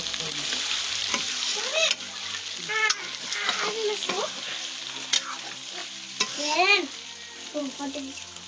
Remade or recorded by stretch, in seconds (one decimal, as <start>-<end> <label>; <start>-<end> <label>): 0.0-1.0 recorded; 1.0-1.9 remade; 1.9-8.5 recorded